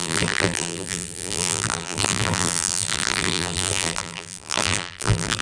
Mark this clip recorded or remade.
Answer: remade